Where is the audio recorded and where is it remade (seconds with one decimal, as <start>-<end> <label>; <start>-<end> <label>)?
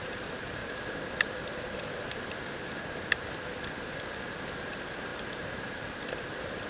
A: 0.0-0.6 remade; 0.6-4.4 recorded; 4.4-6.7 remade